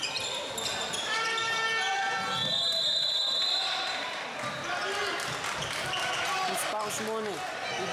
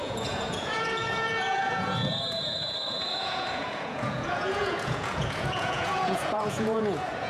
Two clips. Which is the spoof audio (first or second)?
second